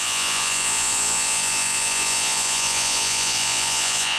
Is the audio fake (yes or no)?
yes